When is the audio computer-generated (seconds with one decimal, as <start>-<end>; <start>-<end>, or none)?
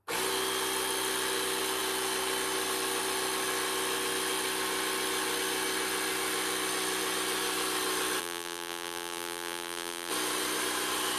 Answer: 8.2-10.1